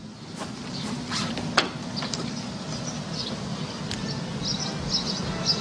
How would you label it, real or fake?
real